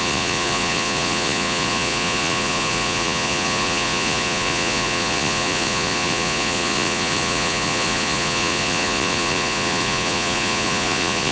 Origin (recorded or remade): remade